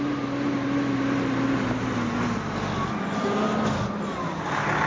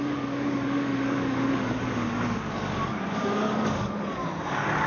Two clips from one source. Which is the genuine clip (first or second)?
first